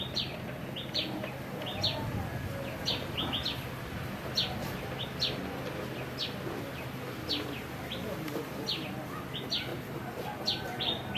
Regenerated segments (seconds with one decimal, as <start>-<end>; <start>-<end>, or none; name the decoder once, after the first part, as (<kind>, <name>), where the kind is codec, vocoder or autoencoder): none